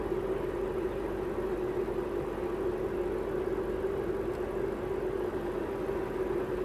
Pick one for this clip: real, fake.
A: real